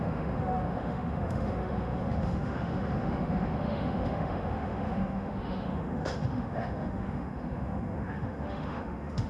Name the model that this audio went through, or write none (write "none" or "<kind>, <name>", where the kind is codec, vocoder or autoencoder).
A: autoencoder, DAC-VAE